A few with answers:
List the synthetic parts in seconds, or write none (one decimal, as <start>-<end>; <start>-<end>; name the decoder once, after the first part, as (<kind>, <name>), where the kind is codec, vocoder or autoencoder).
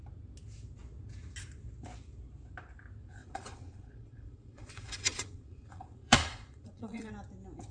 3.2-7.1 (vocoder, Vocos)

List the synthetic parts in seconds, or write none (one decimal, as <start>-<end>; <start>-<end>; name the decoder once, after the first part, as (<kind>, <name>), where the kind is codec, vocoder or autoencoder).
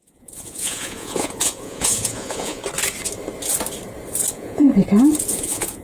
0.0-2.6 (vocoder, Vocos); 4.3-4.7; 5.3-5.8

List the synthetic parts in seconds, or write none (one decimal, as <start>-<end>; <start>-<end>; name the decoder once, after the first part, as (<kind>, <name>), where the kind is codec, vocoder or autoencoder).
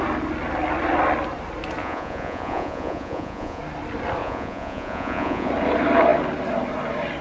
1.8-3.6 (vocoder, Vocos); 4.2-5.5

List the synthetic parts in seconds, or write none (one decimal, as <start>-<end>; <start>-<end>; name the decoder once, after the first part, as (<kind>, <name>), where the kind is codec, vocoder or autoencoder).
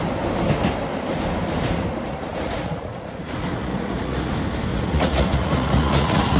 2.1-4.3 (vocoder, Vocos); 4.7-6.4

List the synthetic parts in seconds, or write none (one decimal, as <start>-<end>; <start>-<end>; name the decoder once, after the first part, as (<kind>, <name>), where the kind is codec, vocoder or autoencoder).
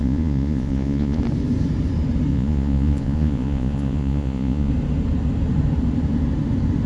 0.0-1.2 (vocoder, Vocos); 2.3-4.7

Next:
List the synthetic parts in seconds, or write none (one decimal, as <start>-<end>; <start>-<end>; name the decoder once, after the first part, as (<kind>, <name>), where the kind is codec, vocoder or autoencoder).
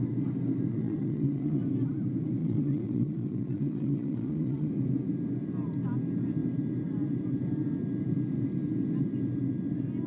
0.7-1.6 (vocoder, Vocos); 2.4-4.7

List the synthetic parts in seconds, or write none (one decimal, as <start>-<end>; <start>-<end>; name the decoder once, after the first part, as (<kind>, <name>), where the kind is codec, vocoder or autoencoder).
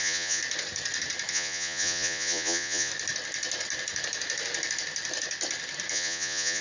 0.0-0.4 (vocoder, Vocos); 1.3-2.9; 5.9-6.6